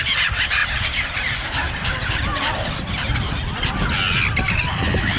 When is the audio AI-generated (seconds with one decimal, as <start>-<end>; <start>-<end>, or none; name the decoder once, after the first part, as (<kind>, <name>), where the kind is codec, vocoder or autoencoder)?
0.6-3.7 (vocoder, BigVGAN v2)

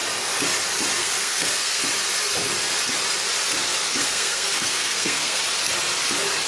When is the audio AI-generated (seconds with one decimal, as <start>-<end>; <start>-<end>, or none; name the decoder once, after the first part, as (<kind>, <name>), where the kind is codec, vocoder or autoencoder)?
1.0-1.8 (codec, SNAC); 4.0-5.4

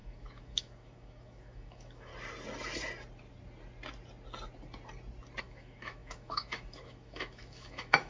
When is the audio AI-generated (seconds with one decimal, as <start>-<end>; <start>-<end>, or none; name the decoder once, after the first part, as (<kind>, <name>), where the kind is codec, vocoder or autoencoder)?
0.0-2.1 (autoencoder, DAC-VAE); 5.4-8.1

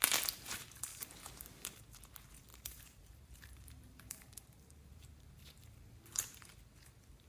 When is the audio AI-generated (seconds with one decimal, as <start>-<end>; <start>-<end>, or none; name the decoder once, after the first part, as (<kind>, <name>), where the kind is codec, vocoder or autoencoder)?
2.5-6.5 (vocoder, BigVGAN v2)

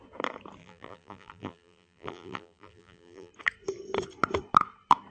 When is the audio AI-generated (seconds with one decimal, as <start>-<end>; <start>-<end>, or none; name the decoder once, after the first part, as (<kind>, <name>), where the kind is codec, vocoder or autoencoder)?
0.6-3.3 (vocoder, BigVGAN v2)

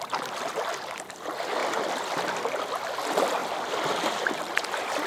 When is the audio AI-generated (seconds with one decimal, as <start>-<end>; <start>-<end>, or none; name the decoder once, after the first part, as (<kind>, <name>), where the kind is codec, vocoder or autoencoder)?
1.6-2.6 (vocoder, BigVGAN v2); 3.4-5.1

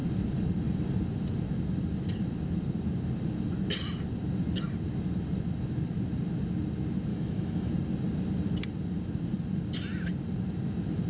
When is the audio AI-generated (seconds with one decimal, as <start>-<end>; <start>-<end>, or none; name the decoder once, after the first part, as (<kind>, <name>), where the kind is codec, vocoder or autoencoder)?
7.1-7.7 (autoencoder, DAC-VAE)